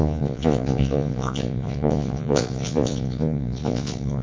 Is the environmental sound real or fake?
fake